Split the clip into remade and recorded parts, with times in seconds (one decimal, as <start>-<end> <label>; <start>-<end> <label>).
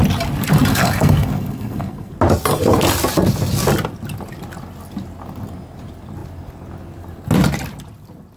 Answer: 0.0-0.7 recorded; 0.7-2.1 remade; 2.1-8.4 recorded